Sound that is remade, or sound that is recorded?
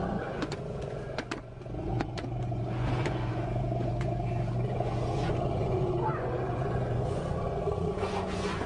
remade